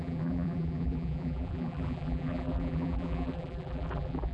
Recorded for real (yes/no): no